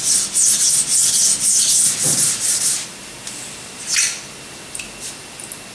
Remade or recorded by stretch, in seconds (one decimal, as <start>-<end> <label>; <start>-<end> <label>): 0.0-5.7 recorded